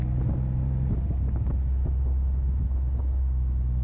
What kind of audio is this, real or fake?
real